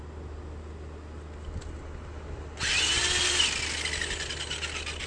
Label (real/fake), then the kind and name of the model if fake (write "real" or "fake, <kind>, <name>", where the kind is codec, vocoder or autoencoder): real